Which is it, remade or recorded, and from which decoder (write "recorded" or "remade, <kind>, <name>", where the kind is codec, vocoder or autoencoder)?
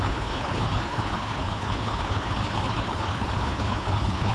remade, codec, HILCodec